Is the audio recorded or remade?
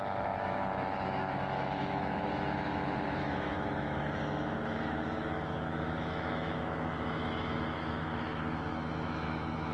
remade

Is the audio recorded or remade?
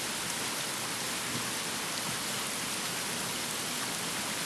recorded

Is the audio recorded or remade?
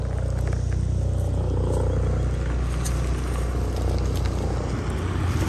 recorded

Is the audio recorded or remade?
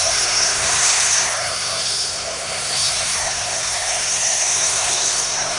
remade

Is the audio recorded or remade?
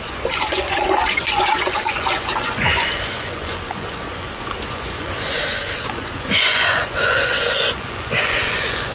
remade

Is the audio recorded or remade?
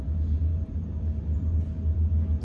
recorded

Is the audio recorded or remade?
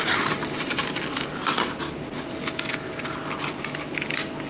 recorded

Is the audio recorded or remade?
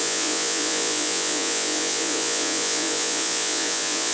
remade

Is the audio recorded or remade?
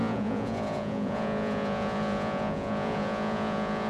remade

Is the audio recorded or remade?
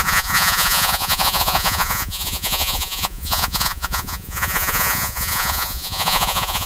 remade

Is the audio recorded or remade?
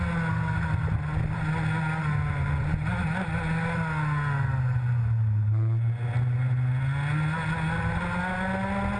recorded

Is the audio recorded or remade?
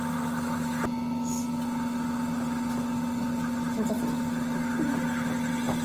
recorded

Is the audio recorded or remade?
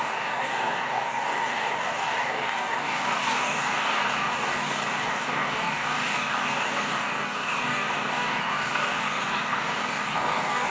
remade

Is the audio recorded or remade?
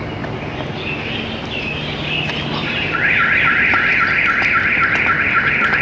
recorded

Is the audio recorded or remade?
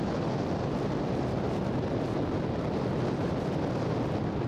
recorded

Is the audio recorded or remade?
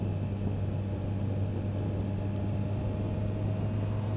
recorded